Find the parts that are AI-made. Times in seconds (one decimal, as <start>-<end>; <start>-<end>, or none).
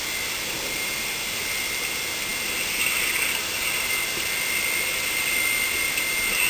none